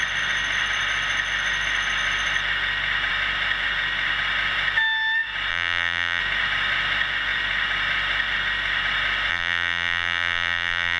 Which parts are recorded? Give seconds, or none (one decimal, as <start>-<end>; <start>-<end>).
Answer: 0.0-5.5; 6.2-9.3